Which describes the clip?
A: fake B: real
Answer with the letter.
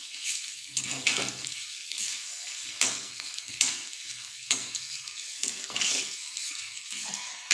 A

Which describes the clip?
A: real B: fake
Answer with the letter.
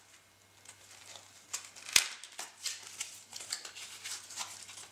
A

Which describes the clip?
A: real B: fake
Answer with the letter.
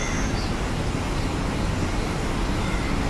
A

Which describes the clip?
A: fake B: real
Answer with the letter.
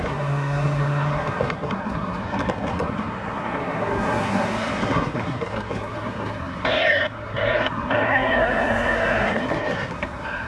A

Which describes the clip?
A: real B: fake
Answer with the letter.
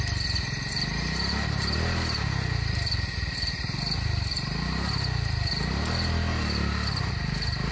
A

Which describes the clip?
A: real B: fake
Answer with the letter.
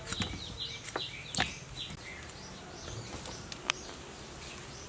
A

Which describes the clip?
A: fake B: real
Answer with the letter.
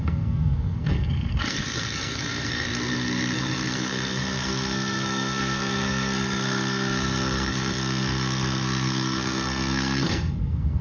A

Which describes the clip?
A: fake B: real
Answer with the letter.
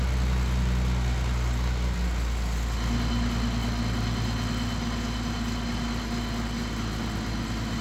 B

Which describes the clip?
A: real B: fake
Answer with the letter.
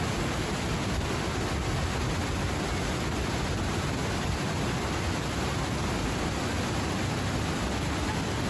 A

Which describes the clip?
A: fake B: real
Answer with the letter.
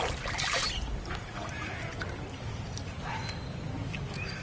B